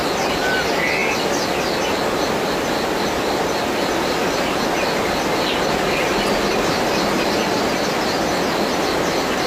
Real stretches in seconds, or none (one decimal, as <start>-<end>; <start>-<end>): 0.0-9.5